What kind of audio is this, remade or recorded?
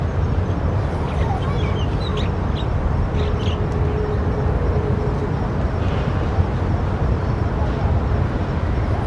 recorded